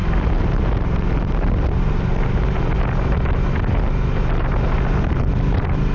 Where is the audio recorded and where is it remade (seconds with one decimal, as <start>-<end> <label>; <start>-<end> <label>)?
0.0-5.9 recorded